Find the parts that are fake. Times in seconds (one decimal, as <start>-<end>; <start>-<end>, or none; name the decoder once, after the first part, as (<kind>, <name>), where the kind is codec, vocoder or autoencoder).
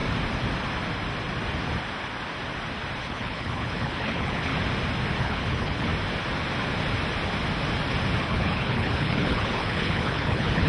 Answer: 3.0-4.5 (codec, HILCodec); 5.2-5.9; 8.2-10.7